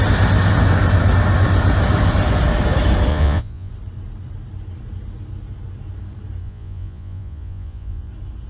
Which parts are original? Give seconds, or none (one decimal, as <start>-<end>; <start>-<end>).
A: 0.0-3.1; 3.7-6.4; 8.1-8.5